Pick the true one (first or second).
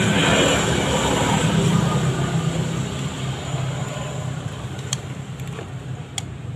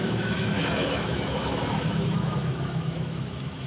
first